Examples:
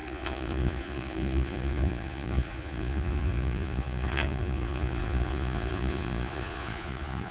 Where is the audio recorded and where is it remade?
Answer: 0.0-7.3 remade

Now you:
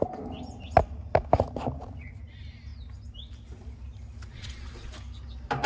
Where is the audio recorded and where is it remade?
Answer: 0.0-4.3 recorded; 4.3-4.9 remade; 4.9-5.7 recorded

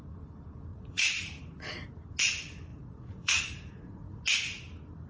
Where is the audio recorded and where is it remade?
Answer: 0.0-0.7 recorded; 0.7-1.4 remade; 1.4-2.7 recorded; 2.7-4.2 remade; 4.2-5.1 recorded

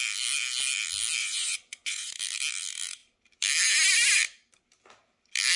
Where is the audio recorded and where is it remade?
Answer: 0.0-1.2 recorded; 1.2-2.1 remade; 2.1-5.6 recorded

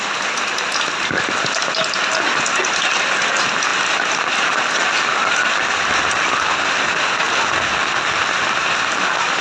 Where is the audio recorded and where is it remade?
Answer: 0.0-9.4 recorded

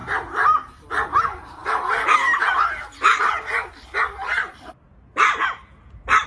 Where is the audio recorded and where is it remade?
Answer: 0.0-6.3 recorded

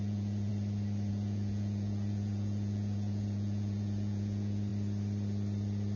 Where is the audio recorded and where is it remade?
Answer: 0.0-0.5 remade; 0.5-1.1 recorded; 1.1-4.7 remade; 4.7-6.0 recorded